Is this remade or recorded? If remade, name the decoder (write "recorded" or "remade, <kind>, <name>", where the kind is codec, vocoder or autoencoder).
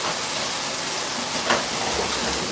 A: recorded